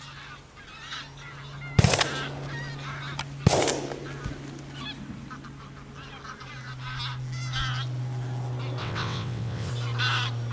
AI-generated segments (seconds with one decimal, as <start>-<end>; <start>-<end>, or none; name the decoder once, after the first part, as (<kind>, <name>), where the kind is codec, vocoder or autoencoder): 8.8-9.7 (vocoder, WaveNeXt)